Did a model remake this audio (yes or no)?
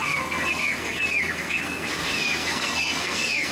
yes